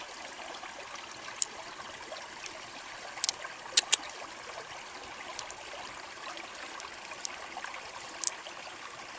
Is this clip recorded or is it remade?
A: recorded